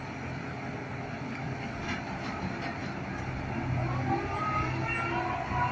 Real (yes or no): yes